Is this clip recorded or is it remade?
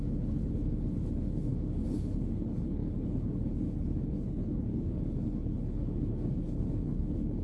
remade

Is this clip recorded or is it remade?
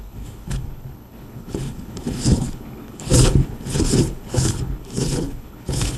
remade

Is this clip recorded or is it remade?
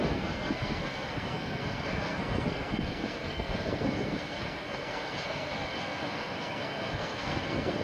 remade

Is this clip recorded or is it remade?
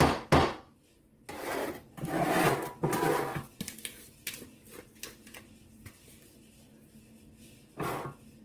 recorded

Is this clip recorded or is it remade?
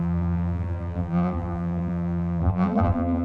remade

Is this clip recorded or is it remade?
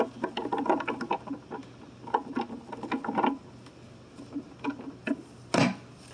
recorded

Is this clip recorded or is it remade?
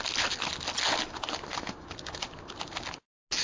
recorded